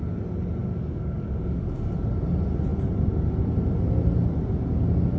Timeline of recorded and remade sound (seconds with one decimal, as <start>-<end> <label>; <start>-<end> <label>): 0.0-0.6 recorded; 0.6-1.9 remade; 1.9-5.2 recorded